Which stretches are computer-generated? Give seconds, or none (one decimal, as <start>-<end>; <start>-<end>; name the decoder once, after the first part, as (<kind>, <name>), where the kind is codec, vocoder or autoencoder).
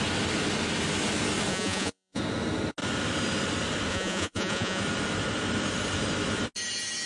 1.5-2.2 (vocoder, Vocos); 3.9-4.8